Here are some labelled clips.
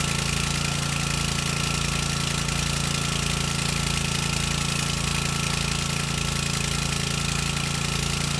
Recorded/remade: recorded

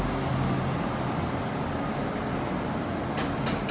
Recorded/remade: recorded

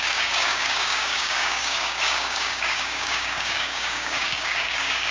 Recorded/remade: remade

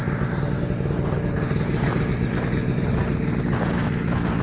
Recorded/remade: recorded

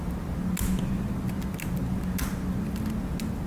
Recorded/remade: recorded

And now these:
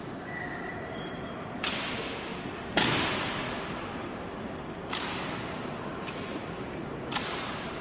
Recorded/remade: remade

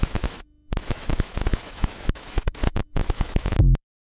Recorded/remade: remade